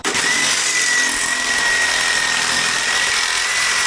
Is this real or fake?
real